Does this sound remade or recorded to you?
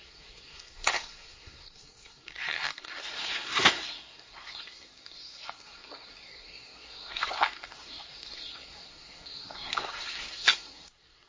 remade